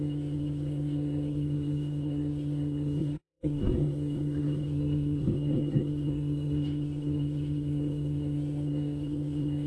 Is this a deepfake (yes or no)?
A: yes